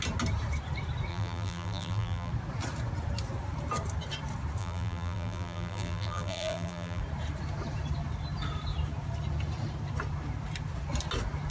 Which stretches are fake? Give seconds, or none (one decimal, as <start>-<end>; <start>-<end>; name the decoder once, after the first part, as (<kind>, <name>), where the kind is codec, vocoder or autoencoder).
1.1-2.3 (vocoder, BigVGAN v2); 4.6-7.0